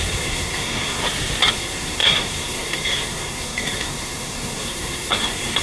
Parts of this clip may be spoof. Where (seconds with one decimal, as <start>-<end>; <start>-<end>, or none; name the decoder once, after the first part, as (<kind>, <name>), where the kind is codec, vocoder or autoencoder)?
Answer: 0.0-1.0 (codec, SNAC); 1.5-5.6